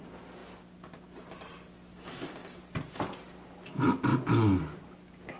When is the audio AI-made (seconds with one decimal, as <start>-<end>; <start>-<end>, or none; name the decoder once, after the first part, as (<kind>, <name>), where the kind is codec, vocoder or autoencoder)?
1.9-2.6 (codec, DAC)